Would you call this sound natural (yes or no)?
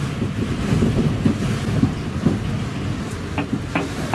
yes